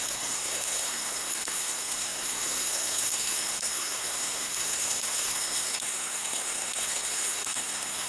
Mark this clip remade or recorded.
remade